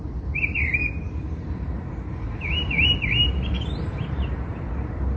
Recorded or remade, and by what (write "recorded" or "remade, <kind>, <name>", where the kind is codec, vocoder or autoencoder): remade, vocoder, BigVGAN v2